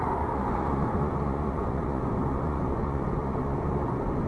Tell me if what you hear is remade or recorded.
remade